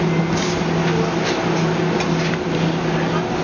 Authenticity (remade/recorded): recorded